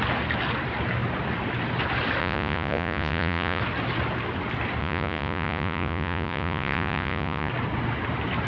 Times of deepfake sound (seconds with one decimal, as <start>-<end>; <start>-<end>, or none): 2.2-3.6; 4.8-7.5